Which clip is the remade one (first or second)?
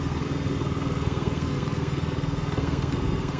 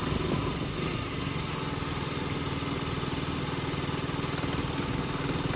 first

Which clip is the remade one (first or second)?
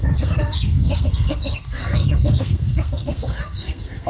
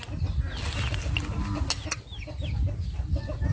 first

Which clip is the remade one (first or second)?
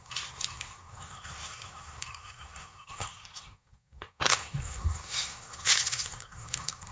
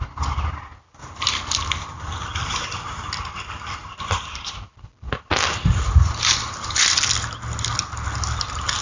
first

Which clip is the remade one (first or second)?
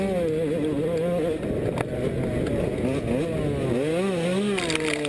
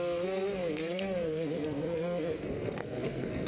second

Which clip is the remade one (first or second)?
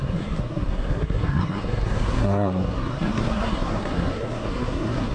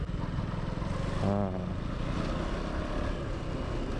first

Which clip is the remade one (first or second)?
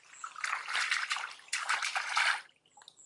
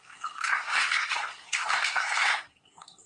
second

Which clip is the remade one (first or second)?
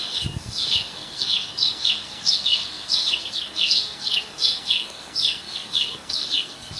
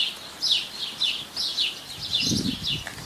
first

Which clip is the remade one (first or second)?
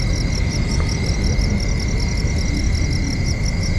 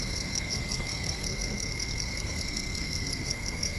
second